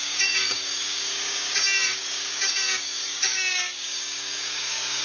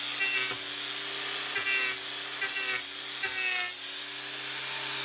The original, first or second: second